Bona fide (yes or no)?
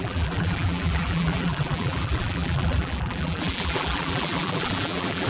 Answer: no